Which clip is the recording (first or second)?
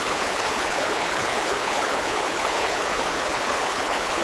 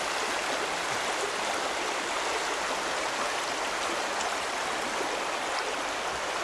second